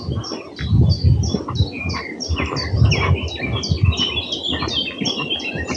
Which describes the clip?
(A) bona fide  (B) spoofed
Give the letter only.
A